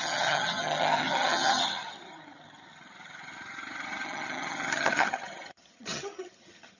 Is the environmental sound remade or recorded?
remade